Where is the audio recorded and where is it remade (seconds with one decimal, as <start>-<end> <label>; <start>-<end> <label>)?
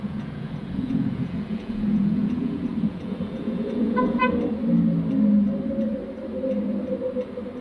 0.0-4.2 remade; 4.2-7.6 recorded